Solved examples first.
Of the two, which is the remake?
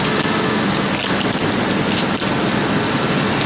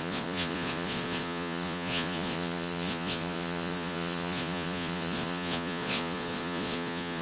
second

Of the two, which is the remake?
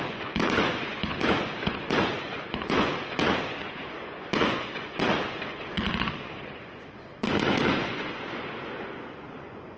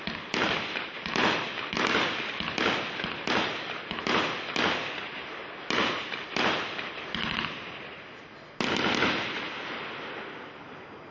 first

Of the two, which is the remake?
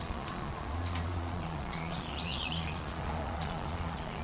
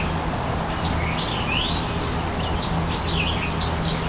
first